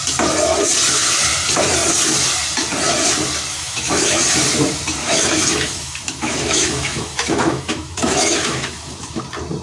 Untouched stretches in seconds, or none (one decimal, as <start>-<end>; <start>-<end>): 0.0-3.5; 4.2-5.0; 9.2-9.6